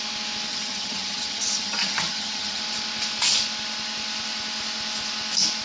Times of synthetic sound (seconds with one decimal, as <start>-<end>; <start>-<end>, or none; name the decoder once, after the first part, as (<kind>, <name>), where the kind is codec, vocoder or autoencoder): 0.5-2.6 (vocoder, HiFi-GAN)

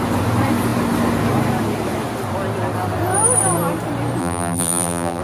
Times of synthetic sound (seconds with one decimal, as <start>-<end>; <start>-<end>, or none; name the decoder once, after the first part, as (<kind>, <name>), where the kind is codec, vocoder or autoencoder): 4.2-5.2 (vocoder, BigVGAN v2)

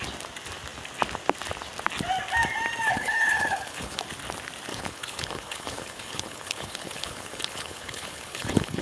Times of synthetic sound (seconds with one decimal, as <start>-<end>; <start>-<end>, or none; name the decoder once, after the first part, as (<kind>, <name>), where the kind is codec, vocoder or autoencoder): 2.9-4.0 (codec, HILCodec); 4.7-8.8

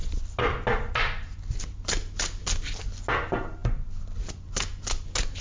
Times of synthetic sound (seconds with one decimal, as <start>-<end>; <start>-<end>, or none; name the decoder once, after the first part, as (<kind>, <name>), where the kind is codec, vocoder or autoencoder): none

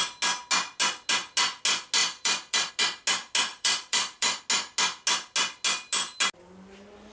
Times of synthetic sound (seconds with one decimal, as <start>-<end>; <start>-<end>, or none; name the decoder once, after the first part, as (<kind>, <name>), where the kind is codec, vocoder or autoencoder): 2.0-2.7 (vocoder, BigVGAN v2); 3.5-4.4

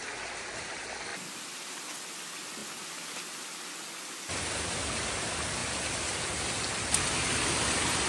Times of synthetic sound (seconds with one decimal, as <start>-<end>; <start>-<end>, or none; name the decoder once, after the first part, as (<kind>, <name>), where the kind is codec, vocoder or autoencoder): none

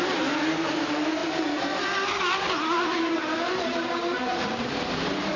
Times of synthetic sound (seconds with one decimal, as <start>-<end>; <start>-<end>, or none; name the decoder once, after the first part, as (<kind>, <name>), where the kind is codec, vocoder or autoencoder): 0.0-5.4 (vocoder, BigVGAN v2)